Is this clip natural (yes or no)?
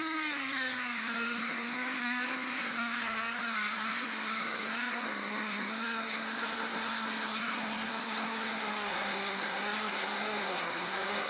no